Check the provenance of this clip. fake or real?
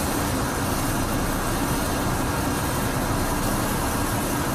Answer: real